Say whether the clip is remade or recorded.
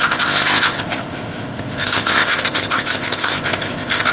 remade